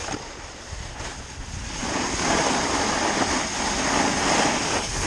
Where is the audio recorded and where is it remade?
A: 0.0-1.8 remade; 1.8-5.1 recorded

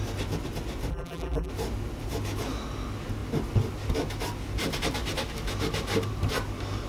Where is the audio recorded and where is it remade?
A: 0.0-0.9 recorded; 0.9-1.5 remade; 1.5-6.9 recorded

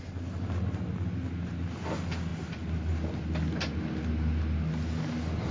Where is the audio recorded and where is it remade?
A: 0.0-5.5 recorded

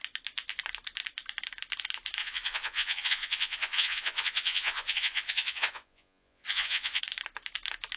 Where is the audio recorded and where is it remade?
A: 0.0-2.2 recorded; 2.2-7.0 remade; 7.0-8.0 recorded

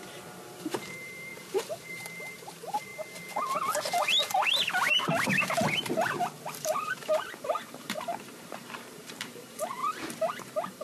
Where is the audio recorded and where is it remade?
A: 0.0-2.9 remade; 2.9-6.4 recorded; 6.4-9.8 remade; 9.8-10.3 recorded; 10.3-10.8 remade

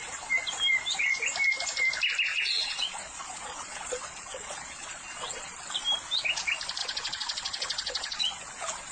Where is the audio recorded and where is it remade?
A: 0.0-2.3 recorded; 2.3-5.5 remade; 5.5-6.8 recorded; 6.8-8.4 remade; 8.4-8.9 recorded

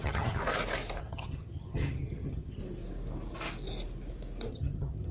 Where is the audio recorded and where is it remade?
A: 0.0-0.4 remade; 0.4-1.0 recorded; 1.0-2.6 remade; 2.6-4.5 recorded; 4.5-5.1 remade